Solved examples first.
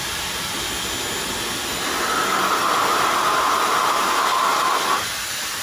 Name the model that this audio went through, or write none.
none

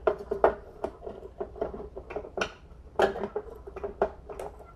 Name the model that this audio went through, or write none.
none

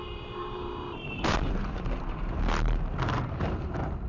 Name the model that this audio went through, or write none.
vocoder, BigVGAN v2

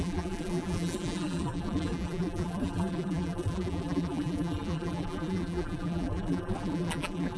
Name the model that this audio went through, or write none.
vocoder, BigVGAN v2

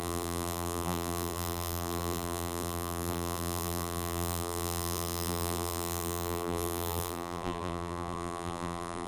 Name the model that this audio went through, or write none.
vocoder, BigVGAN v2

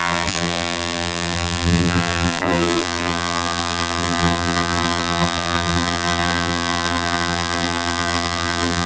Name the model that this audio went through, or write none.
vocoder, BigVGAN v2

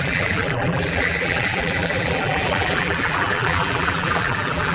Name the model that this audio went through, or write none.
vocoder, BigVGAN v2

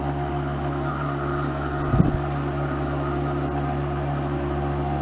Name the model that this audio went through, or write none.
none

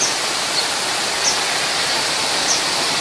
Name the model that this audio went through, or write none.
none